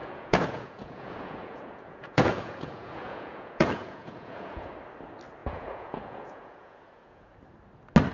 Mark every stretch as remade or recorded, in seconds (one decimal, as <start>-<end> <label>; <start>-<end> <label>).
0.0-4.7 remade; 4.7-5.4 recorded; 5.4-7.3 remade; 7.3-8.1 recorded

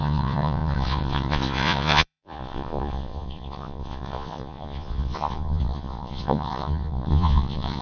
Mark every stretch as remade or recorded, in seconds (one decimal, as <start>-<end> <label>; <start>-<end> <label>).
0.0-7.8 remade

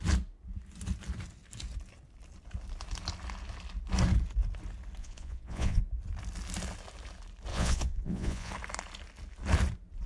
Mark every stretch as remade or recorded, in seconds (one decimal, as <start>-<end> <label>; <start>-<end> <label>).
0.0-5.0 recorded; 5.0-5.8 remade; 5.8-7.5 recorded; 7.5-8.5 remade; 8.5-10.1 recorded

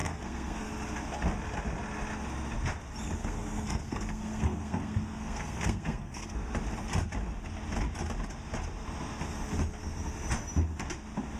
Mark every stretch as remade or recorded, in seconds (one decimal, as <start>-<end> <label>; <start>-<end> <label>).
0.0-0.7 remade; 0.7-3.2 recorded; 3.2-6.6 remade; 6.6-11.4 recorded

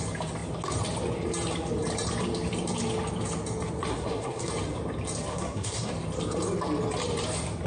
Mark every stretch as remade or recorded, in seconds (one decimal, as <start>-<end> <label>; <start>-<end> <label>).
0.0-3.9 recorded; 3.9-4.5 remade; 4.5-5.3 recorded; 5.3-5.9 remade; 5.9-7.7 recorded

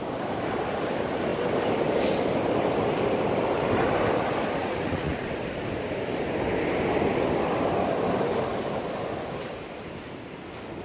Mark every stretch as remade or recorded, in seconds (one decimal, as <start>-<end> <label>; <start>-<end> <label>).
0.0-4.6 recorded; 4.6-5.2 remade; 5.2-10.8 recorded

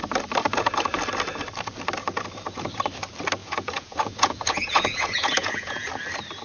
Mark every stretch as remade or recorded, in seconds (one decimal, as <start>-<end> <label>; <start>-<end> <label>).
0.0-3.4 recorded; 3.4-5.9 remade; 5.9-6.4 recorded

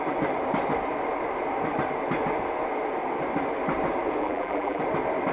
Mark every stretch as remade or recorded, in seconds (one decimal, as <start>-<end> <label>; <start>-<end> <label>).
0.0-4.2 recorded; 4.2-4.8 remade; 4.8-5.3 recorded